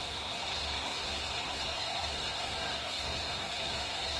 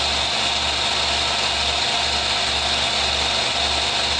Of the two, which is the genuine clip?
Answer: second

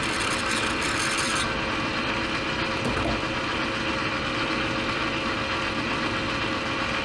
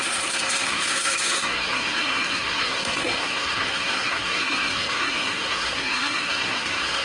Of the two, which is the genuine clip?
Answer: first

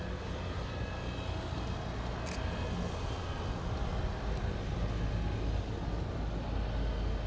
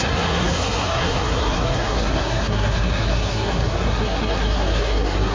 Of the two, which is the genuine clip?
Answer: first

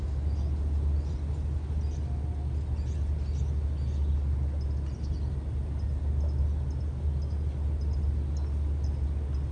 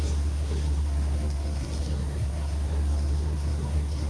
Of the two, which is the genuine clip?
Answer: first